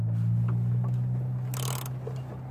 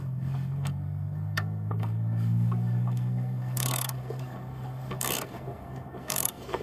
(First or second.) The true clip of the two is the first